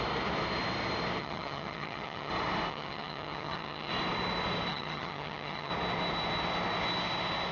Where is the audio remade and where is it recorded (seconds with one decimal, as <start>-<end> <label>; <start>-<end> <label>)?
0.0-1.2 recorded; 1.2-2.3 remade; 2.3-2.7 recorded; 2.7-3.9 remade; 3.9-4.7 recorded; 4.7-5.7 remade; 5.7-7.5 recorded